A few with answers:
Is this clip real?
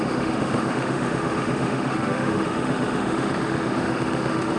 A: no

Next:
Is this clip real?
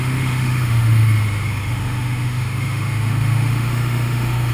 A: no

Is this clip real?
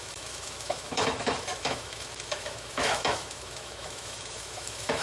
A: no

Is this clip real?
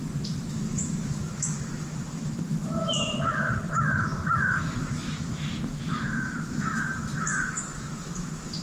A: no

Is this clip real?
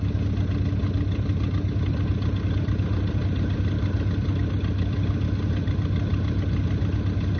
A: yes